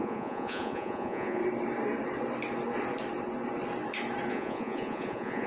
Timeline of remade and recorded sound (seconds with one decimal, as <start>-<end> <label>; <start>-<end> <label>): 0.0-1.4 remade; 1.4-4.3 recorded; 4.3-5.5 remade

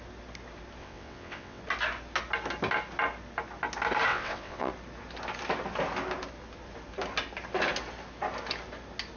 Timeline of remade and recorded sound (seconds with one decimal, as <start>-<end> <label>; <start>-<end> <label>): 0.0-0.8 recorded; 0.8-1.6 remade; 1.6-4.1 recorded; 4.1-4.7 remade; 4.7-9.2 recorded

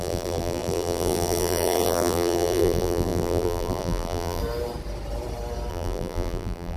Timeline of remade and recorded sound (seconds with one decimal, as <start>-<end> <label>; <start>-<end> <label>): 0.0-4.4 remade; 4.4-5.7 recorded; 5.7-6.8 remade

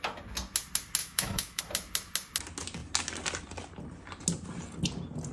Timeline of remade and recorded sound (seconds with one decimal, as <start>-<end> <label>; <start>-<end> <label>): 0.0-1.0 recorded; 1.0-1.6 remade; 1.6-5.3 recorded

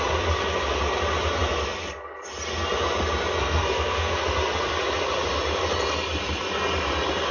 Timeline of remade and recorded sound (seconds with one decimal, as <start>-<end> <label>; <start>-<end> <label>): 0.0-3.4 recorded; 3.4-4.1 remade; 4.1-7.3 recorded